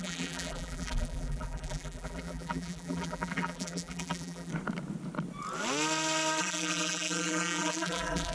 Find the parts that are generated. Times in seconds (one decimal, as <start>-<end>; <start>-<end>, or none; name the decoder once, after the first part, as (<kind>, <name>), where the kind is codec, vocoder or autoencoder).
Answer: 0.0-4.5 (vocoder, BigVGAN v2); 6.4-8.3

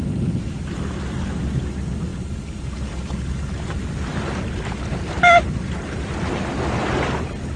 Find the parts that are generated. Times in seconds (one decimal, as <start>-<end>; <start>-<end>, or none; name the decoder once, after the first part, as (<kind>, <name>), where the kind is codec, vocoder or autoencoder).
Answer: 2.1-3.8 (vocoder, BigVGAN v2)

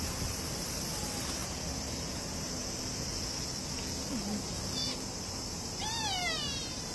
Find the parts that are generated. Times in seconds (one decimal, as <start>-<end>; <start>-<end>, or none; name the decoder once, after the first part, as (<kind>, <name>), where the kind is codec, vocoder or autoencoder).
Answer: 0.0-2.6 (vocoder, BigVGAN v2); 5.1-6.9

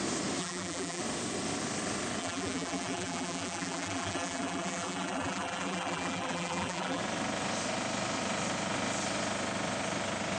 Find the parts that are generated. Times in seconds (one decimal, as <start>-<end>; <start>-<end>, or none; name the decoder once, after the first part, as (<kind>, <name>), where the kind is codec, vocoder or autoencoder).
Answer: 0.4-1.0 (vocoder, BigVGAN v2); 2.2-7.0

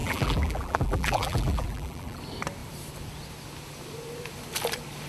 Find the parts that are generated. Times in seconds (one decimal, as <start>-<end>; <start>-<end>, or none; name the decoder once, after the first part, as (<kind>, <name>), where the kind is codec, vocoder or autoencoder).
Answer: 0.0-2.2 (vocoder, BigVGAN v2)

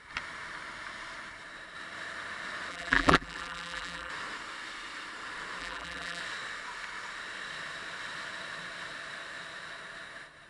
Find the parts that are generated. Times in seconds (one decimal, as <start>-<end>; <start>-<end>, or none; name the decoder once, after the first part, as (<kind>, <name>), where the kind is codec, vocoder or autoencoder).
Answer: 2.7-4.1 (vocoder, BigVGAN v2); 5.6-6.2

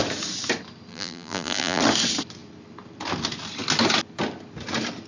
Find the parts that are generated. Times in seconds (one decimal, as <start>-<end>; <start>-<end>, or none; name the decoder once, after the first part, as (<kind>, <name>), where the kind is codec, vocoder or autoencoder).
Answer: 0.9-1.8 (vocoder, BigVGAN v2)

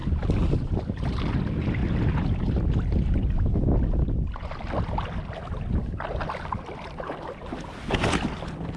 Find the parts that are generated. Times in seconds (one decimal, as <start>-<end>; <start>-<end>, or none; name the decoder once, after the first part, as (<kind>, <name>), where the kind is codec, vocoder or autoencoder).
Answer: none